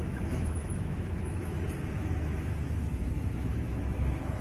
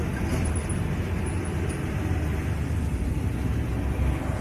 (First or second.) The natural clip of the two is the second